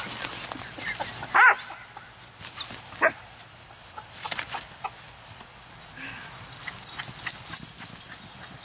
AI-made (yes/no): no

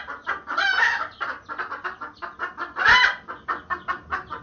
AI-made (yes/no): no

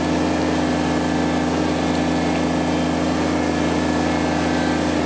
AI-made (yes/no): no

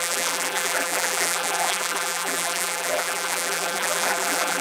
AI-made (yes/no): yes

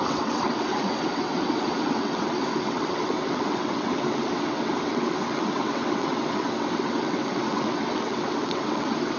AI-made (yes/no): yes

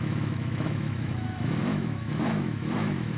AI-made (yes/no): yes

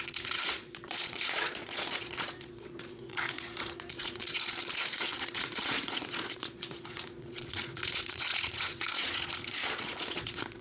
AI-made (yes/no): yes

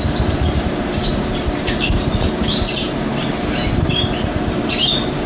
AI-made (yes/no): yes